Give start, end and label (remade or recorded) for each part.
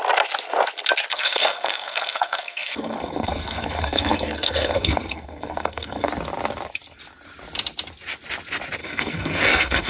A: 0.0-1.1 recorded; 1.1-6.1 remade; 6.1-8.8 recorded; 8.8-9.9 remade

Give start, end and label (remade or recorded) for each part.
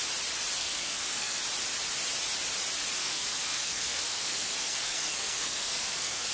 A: 0.0-0.6 recorded; 0.6-1.4 remade; 1.4-3.0 recorded; 3.0-6.3 remade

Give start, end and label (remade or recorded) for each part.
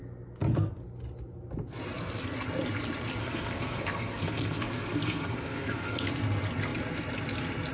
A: 0.0-3.2 recorded; 3.2-6.1 remade; 6.1-7.7 recorded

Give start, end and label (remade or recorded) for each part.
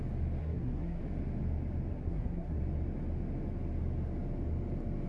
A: 0.0-0.4 recorded; 0.4-1.0 remade; 1.0-1.9 recorded; 1.9-2.6 remade; 2.6-5.1 recorded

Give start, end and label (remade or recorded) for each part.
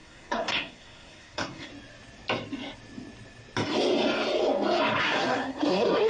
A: 0.0-1.7 remade; 1.7-5.0 recorded; 5.0-6.1 remade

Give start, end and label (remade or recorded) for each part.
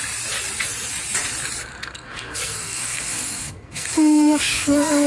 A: 0.0-1.7 recorded; 1.7-5.1 remade